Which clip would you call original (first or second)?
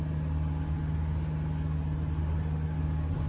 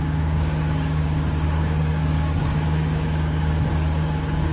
first